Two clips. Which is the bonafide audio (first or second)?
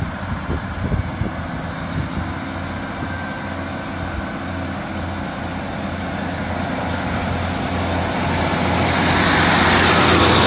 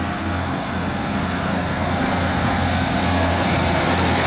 first